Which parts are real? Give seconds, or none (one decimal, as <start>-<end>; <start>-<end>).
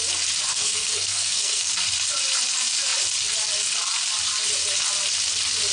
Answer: 0.0-0.5; 1.7-5.7